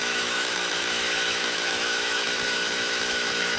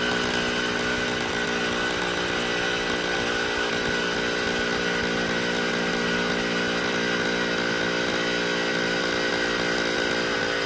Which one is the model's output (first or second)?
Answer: first